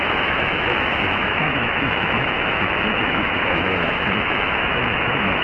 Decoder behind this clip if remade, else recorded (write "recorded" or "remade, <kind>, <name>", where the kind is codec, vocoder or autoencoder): remade, autoencoder, DAC-VAE